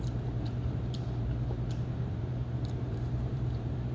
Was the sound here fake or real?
fake